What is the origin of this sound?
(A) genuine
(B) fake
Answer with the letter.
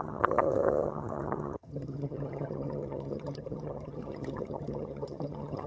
B